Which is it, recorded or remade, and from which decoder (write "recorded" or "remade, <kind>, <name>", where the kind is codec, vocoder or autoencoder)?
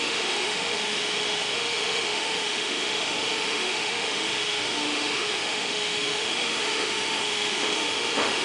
remade, autoencoder, DAC-VAE